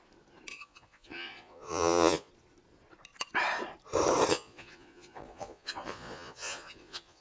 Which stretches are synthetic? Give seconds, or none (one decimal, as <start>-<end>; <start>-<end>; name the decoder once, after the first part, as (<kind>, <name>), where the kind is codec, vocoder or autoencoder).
0.5-2.3 (vocoder, Vocos); 4.3-7.2